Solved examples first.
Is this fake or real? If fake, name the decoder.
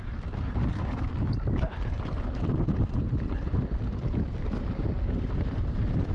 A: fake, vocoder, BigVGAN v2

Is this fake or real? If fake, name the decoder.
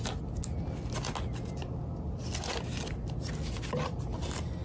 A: real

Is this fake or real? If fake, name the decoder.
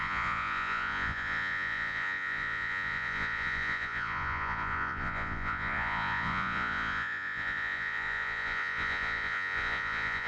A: fake, vocoder, Vocos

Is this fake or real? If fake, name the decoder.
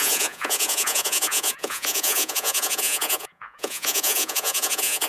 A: fake, vocoder, Vocos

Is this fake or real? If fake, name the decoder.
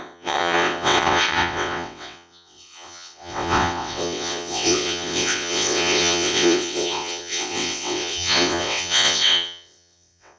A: fake, vocoder, WaveNeXt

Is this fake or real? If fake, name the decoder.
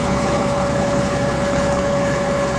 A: fake, codec, HILCodec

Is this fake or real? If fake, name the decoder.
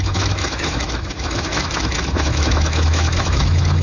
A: fake, autoencoder, DAC-VAE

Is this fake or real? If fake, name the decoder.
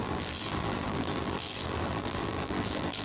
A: fake, vocoder, BigVGAN v2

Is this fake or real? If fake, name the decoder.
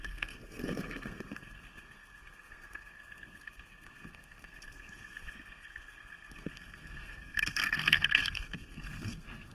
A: fake, codec, SNAC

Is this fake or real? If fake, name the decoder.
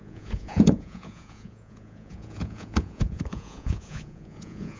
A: fake, vocoder, Vocos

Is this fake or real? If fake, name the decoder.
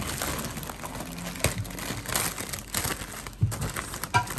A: real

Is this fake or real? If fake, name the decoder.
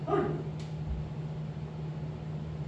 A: real